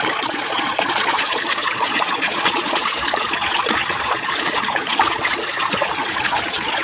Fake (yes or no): yes